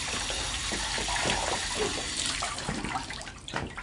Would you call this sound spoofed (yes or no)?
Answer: yes